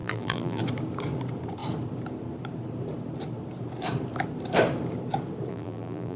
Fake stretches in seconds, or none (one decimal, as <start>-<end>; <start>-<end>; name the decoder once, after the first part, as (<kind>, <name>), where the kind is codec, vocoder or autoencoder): 0.0-0.6 (vocoder, BigVGAN v2); 5.5-6.2